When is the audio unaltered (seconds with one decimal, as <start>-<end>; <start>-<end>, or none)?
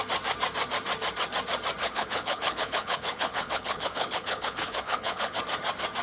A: 0.0-1.8; 5.4-6.0